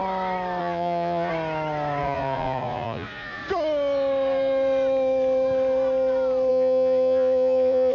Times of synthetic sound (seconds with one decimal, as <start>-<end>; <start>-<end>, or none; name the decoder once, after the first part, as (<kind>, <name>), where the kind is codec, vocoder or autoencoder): 0.6-1.3 (vocoder, Vocos); 2.0-3.4; 6.5-7.9